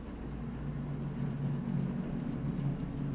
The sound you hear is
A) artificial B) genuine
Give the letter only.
B